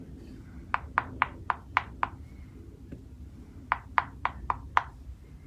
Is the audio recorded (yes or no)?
yes